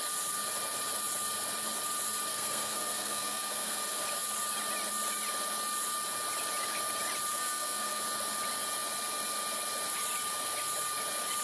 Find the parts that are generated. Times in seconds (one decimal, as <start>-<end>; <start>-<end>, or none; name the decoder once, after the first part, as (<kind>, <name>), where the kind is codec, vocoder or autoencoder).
2.3-3.8 (codec, SNAC); 7.3-8.0